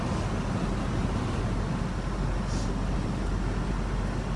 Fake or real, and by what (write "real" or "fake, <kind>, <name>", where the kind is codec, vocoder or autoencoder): real